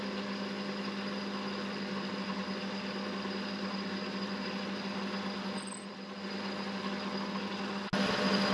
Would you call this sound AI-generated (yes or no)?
no